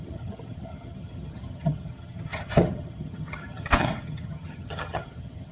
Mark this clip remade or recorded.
remade